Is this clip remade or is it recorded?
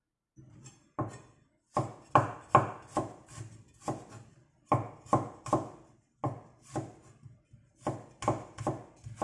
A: recorded